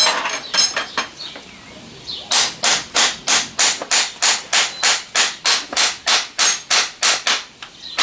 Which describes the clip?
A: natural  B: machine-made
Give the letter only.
A